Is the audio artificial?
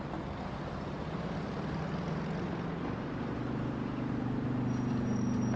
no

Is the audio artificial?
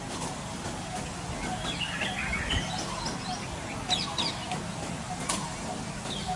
no